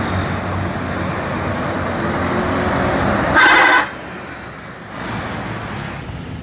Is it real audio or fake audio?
real